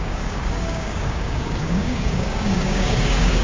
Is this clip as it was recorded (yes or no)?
no